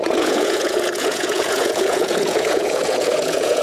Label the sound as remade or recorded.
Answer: remade